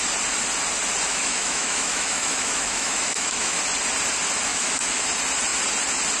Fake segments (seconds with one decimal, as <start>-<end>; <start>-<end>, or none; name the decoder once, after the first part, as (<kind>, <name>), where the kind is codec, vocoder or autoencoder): 1.1-3.6 (autoencoder, DAC-VAE); 4.5-5.0